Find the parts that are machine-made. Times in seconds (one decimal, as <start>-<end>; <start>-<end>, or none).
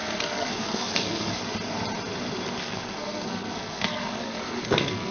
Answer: 0.0-1.4; 2.6-5.1